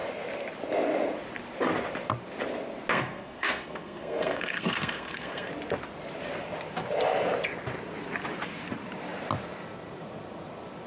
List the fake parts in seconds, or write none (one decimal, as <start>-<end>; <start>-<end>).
2.9-5.5